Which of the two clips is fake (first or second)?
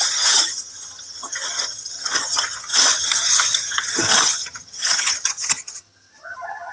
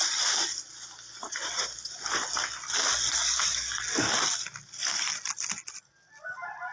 first